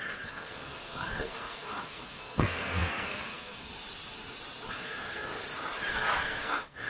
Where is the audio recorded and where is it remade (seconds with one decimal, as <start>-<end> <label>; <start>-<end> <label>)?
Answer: 0.0-3.7 remade; 3.7-4.7 recorded; 4.7-5.3 remade; 5.3-5.9 recorded; 5.9-6.9 remade